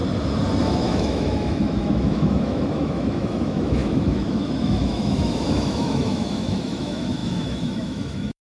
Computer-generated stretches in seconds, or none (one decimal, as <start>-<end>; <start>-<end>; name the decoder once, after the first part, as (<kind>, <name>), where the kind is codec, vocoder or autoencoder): 0.6-8.5 (autoencoder, DAC-VAE)